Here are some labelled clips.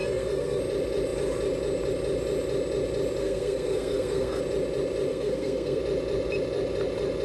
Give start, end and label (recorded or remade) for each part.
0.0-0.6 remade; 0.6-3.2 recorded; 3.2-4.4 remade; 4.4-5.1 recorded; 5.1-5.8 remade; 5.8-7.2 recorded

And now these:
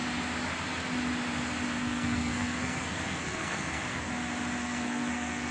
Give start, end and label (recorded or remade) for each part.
0.0-1.8 recorded; 1.8-4.1 remade; 4.1-4.6 recorded; 4.6-5.5 remade

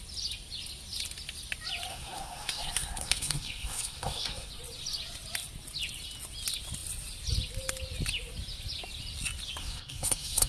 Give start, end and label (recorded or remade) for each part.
0.0-1.9 recorded; 1.9-4.5 remade; 4.5-9.6 recorded; 9.6-10.5 remade

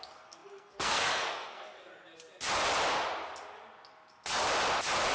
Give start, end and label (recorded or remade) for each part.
0.0-1.9 remade; 1.9-5.1 recorded

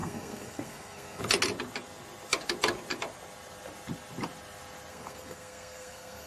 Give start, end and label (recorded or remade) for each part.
0.0-1.2 remade; 1.2-4.9 recorded; 4.9-6.3 remade

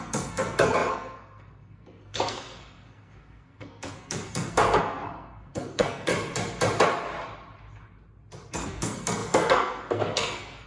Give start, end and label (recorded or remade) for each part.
0.0-6.1 remade; 6.1-8.5 recorded; 8.5-10.7 remade